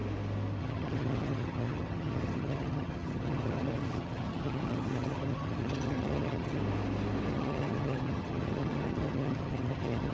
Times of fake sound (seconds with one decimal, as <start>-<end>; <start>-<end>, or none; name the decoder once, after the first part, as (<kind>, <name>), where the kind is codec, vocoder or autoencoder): 0.6-6.6 (vocoder, HiFi-GAN); 7.3-10.1